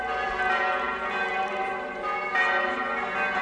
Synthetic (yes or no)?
no